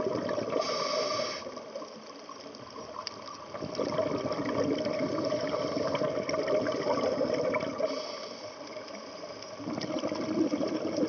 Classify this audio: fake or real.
real